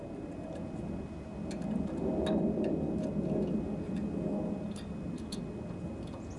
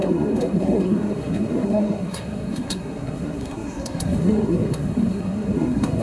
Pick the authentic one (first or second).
first